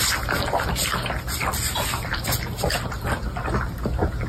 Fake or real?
real